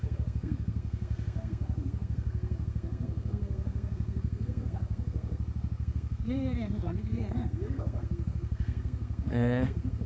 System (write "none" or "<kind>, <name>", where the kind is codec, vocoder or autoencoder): codec, SNAC